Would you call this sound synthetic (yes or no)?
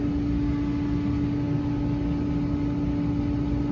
no